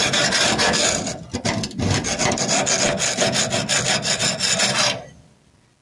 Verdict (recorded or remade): recorded